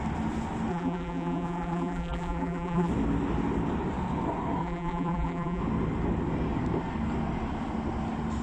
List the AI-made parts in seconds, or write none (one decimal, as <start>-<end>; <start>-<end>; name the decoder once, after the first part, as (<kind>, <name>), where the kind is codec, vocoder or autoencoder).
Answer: 0.7-2.9 (vocoder, BigVGAN v2); 4.6-5.6